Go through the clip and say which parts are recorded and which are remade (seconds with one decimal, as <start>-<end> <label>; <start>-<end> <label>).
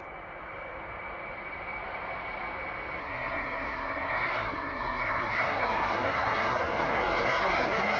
0.0-3.0 recorded; 3.0-8.0 remade